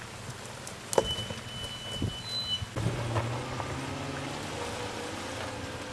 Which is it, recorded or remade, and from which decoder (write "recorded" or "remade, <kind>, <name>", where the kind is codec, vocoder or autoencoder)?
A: recorded